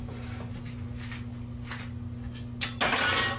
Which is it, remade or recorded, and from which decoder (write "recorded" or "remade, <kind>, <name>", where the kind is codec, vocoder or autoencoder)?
recorded